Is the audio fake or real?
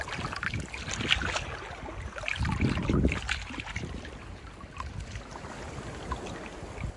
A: real